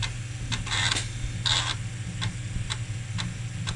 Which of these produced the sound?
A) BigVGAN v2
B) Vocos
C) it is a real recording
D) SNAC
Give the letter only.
C